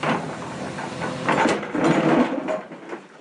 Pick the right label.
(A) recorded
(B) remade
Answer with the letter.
A